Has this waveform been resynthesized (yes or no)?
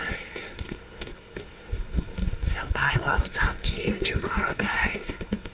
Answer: yes